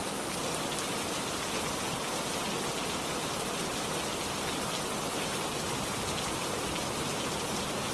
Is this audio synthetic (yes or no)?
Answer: no